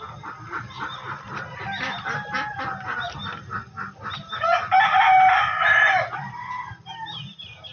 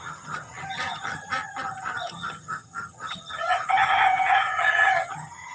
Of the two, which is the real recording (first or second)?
first